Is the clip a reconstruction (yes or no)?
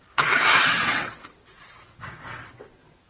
yes